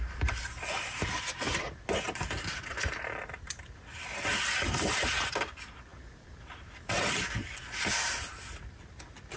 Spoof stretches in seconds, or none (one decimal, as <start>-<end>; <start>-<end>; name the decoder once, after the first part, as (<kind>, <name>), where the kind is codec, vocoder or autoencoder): none